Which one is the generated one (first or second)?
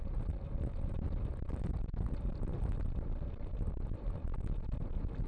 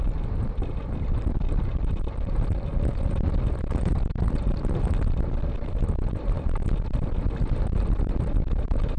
second